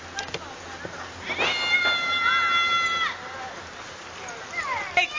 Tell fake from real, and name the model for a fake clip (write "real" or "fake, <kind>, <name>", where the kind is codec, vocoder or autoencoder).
real